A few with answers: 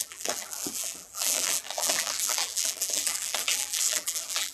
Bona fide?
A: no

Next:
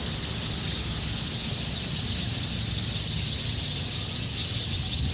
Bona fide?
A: yes